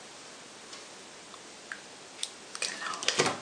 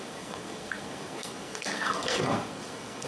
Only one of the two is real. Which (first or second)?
first